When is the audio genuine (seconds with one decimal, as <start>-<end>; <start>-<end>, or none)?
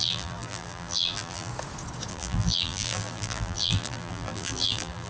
1.5-2.1